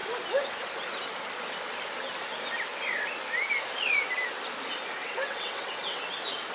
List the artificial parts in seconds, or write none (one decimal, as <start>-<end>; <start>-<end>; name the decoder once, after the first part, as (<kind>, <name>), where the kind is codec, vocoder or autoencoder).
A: 5.0-6.0 (vocoder, WaveNeXt)